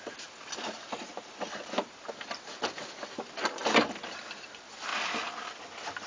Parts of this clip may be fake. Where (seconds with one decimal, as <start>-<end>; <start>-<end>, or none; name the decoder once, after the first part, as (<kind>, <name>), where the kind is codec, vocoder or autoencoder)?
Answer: 0.0-4.9 (vocoder, BigVGAN v2)